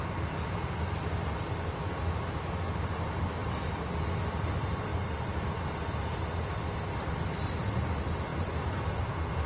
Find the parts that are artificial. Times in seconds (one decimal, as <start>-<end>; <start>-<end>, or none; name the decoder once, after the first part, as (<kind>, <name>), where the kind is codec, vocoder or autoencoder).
none